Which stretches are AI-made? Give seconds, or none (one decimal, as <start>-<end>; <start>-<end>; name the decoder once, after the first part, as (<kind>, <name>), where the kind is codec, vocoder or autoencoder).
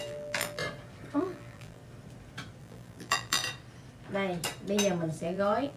0.0-0.6 (vocoder, BigVGAN v2); 1.2-1.8; 2.6-3.4; 5.2-5.8